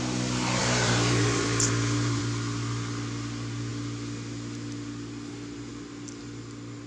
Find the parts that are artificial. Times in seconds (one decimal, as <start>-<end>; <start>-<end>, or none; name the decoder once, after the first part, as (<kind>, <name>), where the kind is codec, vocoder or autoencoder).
0.6-2.2 (vocoder, BigVGAN v2)